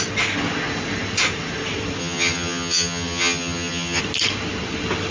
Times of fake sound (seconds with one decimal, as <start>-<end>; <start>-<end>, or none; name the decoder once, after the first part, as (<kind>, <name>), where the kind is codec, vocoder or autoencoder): 2.0-4.0 (vocoder, HiFi-GAN)